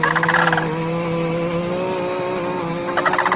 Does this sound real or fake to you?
real